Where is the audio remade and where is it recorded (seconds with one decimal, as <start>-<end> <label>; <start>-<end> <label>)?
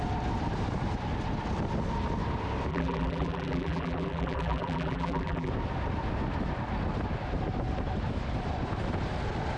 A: 0.0-2.7 recorded; 2.7-5.5 remade; 5.5-9.6 recorded